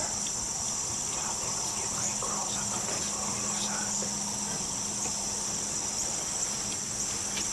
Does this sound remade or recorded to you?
recorded